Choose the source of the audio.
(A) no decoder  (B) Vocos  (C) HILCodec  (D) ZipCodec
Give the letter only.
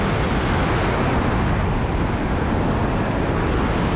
A